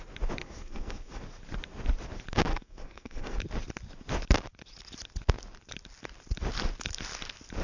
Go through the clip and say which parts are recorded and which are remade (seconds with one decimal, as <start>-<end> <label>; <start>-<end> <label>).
0.0-0.4 recorded; 0.4-1.2 remade; 1.2-2.5 recorded; 2.5-3.4 remade; 3.4-7.6 recorded